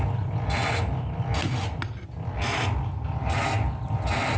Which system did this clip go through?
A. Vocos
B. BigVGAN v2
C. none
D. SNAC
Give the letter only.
C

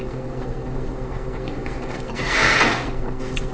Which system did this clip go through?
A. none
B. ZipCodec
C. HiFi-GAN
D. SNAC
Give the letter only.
D